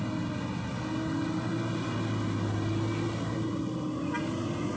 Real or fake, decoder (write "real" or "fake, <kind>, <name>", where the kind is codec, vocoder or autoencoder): real